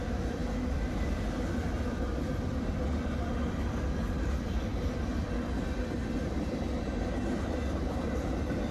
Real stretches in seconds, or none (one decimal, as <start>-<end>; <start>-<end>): 0.0-8.7

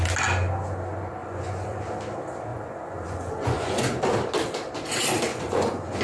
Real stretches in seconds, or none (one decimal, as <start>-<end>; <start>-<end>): 0.0-1.2; 1.8-2.5; 3.8-5.3

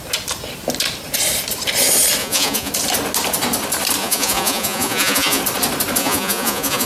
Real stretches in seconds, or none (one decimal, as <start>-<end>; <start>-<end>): 0.0-2.2; 2.7-4.0; 5.4-6.0

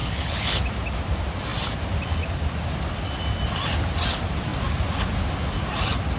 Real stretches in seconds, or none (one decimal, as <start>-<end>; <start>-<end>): 0.6-6.2

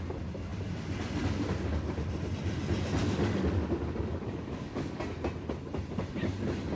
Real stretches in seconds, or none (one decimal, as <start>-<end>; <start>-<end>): 0.0-3.0; 5.0-6.8